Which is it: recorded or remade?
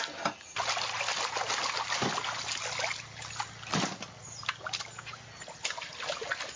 recorded